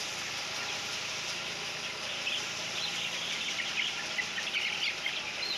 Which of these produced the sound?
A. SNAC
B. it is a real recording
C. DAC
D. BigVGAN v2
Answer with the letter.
B